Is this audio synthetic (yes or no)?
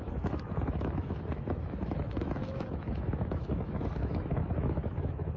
yes